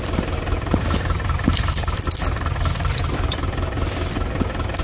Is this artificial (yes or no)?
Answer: no